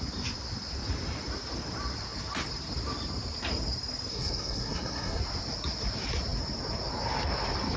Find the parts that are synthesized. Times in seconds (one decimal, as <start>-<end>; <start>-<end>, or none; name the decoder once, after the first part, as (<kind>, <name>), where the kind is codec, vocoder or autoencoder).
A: 4.1-5.2 (codec, SNAC)